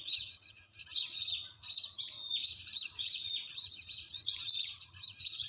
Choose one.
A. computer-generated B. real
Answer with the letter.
A